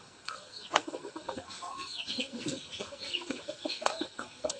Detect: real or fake fake